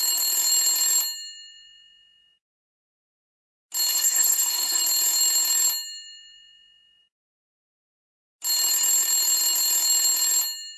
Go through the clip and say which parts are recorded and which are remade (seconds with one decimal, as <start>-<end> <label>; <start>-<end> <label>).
0.0-3.9 recorded; 3.9-4.8 remade; 4.8-10.8 recorded